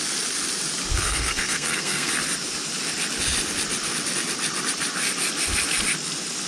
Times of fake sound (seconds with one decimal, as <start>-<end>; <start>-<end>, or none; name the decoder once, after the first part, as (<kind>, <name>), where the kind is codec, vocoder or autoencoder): 0.9-2.1 (codec, SNAC)